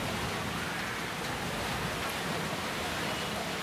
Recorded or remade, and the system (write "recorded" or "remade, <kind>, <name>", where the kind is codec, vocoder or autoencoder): recorded